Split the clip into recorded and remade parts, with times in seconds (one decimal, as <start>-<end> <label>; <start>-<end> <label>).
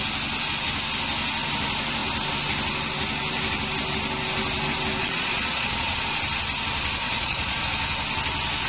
0.0-5.0 recorded; 5.0-6.0 remade; 6.0-7.0 recorded; 7.0-7.6 remade; 7.6-8.7 recorded